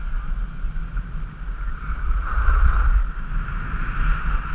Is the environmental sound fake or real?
real